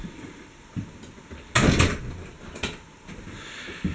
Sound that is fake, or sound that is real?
real